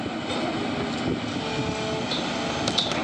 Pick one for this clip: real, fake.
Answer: real